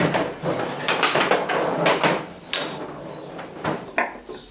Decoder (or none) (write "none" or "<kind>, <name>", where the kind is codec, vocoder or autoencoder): none